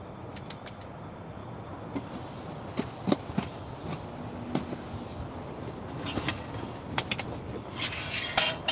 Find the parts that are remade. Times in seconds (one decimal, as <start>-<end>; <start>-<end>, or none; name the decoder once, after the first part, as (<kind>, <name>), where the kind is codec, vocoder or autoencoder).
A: none